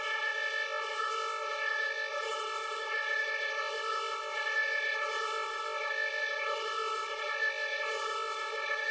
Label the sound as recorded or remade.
remade